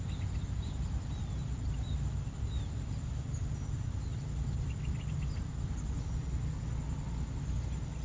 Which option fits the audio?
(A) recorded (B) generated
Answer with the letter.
A